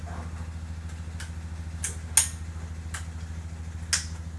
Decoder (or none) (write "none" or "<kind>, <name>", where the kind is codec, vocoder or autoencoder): none